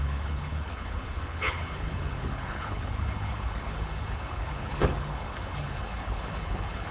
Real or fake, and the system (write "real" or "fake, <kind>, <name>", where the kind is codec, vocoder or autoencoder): fake, codec, HILCodec